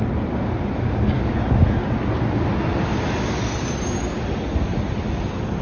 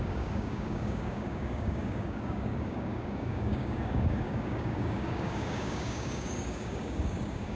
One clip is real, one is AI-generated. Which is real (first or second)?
first